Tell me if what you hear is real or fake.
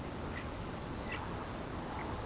real